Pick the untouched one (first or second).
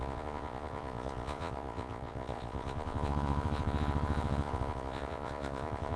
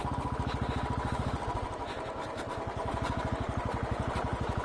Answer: second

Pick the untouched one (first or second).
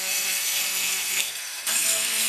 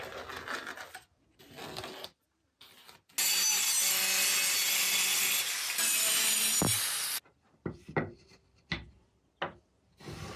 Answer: second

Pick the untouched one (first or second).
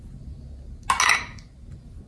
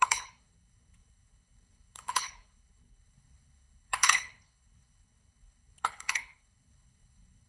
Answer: first